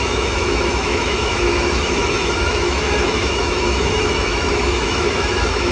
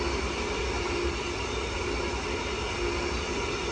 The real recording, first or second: second